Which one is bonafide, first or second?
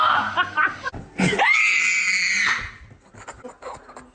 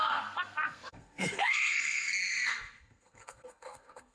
first